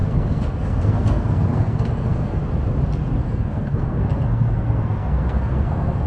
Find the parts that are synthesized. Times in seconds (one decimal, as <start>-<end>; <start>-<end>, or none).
0.0-2.4; 3.2-6.1